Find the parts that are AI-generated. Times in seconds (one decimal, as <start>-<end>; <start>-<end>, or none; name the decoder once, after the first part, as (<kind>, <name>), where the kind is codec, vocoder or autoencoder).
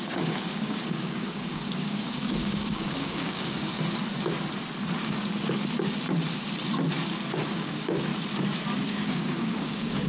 0.0-3.7 (codec, DAC); 7.4-8.1; 8.8-10.1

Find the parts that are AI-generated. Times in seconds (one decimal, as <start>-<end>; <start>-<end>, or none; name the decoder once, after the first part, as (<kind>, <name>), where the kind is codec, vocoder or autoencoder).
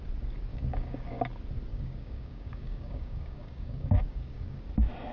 0.5-1.2 (codec, DAC); 1.7-4.6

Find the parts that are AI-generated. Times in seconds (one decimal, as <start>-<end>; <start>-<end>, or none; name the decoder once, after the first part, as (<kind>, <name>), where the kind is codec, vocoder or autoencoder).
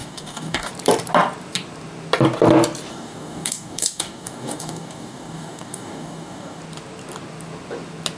0.0-0.7 (codec, DAC); 2.9-6.6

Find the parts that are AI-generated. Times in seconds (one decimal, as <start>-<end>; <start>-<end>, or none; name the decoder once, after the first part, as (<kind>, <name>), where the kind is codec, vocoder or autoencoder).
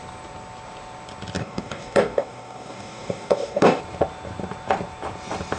1.4-3.8 (codec, DAC)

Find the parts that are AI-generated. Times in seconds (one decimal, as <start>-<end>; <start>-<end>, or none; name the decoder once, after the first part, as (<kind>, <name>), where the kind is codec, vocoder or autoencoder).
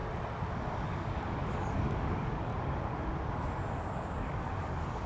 0.5-2.5 (codec, DAC); 3.7-5.1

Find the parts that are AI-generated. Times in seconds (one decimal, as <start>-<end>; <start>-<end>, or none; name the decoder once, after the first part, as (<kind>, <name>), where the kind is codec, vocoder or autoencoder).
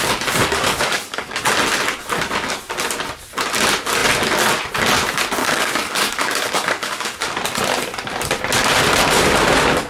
0.4-1.4 (codec, DAC); 5.4-7.2